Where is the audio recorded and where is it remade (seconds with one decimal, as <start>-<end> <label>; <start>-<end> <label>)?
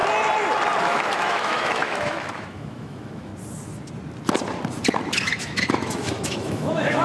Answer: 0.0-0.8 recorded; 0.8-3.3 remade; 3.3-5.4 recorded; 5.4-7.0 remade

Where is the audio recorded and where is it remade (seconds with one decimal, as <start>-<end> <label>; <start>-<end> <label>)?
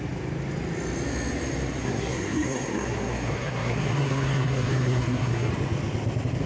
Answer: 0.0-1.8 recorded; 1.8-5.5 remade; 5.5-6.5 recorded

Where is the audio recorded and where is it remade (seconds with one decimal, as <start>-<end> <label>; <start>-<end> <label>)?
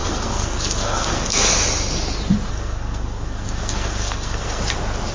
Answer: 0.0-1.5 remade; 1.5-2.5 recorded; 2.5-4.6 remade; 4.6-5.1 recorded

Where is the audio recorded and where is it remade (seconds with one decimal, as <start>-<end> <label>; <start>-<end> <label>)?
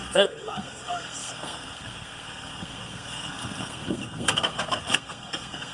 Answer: 0.0-5.7 remade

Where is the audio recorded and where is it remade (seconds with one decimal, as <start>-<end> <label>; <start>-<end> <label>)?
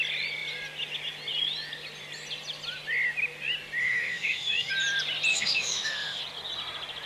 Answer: 0.0-3.8 recorded; 3.8-4.7 remade; 4.7-5.3 recorded; 5.3-6.2 remade; 6.2-7.1 recorded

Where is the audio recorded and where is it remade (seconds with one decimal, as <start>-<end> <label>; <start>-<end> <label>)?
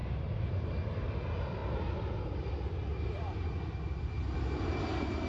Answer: 0.0-0.5 remade; 0.5-5.3 recorded